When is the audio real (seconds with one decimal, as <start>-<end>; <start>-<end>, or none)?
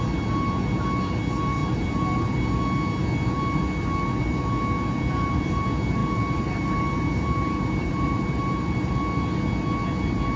0.0-6.0; 9.0-10.4